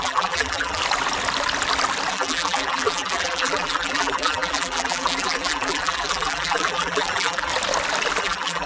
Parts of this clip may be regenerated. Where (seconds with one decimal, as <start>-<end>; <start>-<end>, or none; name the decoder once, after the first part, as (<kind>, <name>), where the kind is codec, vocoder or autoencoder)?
0.0-0.8 (vocoder, BigVGAN v2); 2.1-7.5; 8.2-8.7